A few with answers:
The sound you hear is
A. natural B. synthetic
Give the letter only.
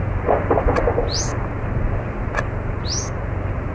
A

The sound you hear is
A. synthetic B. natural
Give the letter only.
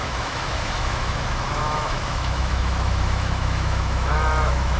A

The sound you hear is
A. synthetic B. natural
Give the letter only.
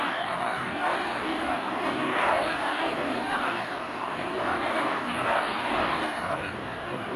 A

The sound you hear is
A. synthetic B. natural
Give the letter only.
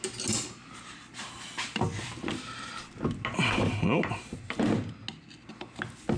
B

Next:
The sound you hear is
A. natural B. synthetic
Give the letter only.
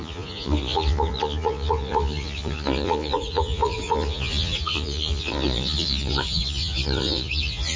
B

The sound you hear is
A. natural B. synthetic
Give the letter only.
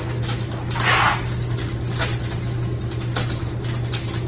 A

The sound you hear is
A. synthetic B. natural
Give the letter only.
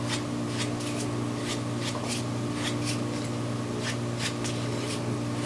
B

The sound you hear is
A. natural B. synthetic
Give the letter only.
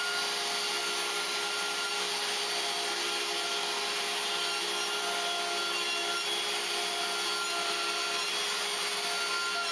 A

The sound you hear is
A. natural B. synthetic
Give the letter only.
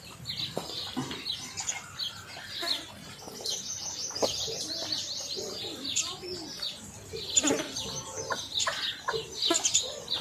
A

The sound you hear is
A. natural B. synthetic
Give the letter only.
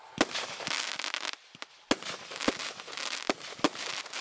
A